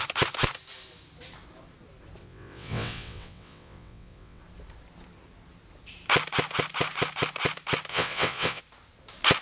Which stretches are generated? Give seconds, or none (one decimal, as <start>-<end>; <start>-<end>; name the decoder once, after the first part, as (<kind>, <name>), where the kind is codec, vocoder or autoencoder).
2.2-4.4 (vocoder, WaveNeXt); 7.9-8.6